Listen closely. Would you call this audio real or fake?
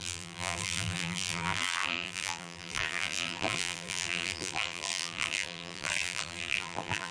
fake